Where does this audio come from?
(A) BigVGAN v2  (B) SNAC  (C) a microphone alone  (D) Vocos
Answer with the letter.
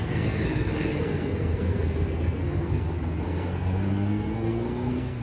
B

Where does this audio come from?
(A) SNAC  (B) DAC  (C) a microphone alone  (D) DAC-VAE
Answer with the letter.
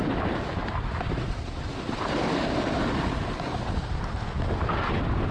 C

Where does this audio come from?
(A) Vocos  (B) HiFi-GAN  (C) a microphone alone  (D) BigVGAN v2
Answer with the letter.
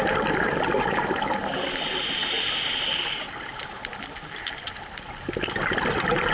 C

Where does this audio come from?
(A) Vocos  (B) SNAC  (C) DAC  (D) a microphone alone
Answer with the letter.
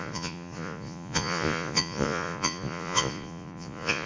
A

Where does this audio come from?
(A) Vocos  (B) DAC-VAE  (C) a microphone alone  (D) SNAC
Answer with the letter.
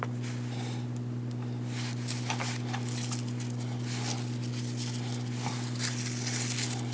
C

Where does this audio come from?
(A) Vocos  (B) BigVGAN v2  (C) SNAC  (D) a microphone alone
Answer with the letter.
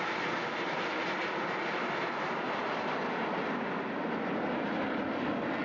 D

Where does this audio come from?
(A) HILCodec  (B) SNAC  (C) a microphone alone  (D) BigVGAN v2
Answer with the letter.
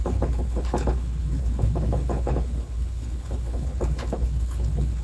A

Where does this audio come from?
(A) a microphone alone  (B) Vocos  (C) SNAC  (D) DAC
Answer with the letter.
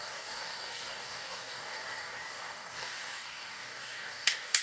D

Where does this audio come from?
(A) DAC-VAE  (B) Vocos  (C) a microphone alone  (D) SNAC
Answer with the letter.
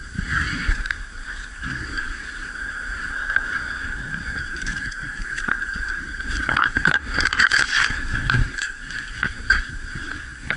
D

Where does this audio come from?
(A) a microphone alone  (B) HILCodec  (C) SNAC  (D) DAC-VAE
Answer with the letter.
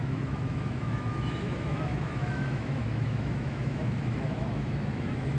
D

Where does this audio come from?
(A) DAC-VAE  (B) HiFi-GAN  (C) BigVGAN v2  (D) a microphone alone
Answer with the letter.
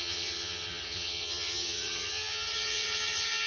B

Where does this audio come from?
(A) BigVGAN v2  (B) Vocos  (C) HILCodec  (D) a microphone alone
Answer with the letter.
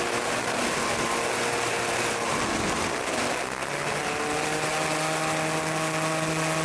D